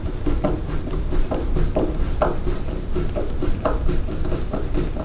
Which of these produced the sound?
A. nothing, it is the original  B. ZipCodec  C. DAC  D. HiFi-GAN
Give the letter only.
A